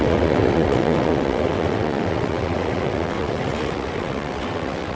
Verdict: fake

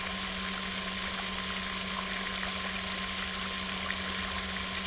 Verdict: real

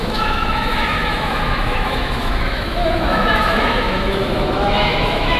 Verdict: fake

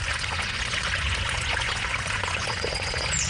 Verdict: fake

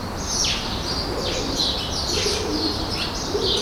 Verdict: real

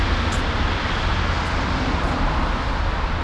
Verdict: real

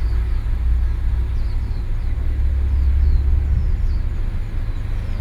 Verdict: real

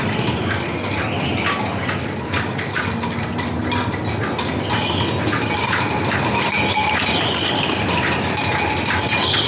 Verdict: real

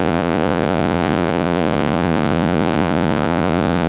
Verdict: fake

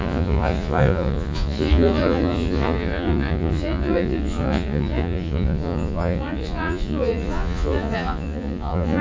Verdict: fake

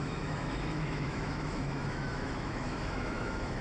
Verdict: fake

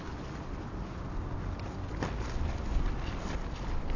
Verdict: real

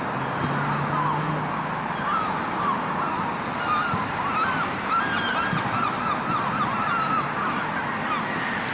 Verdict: real